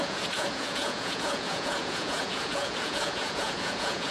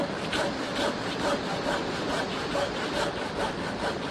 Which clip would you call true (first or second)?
second